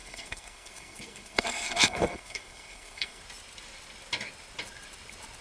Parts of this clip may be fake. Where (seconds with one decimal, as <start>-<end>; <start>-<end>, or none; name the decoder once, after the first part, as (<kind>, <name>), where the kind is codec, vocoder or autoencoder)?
0.0-3.2 (codec, SNAC)